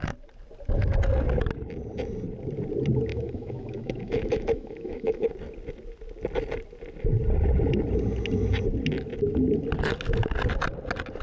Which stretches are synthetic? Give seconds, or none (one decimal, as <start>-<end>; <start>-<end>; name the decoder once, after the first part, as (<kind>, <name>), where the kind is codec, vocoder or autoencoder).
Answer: 3.1-5.3 (autoencoder, DAC-VAE)